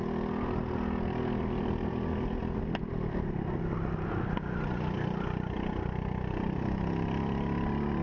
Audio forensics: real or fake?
real